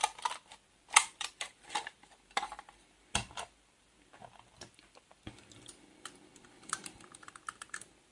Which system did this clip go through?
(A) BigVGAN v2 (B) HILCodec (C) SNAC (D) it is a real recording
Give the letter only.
A